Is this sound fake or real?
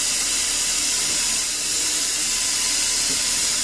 real